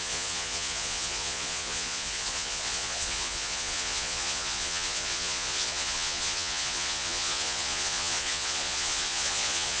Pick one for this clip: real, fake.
fake